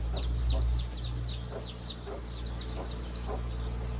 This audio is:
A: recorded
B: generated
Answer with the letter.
A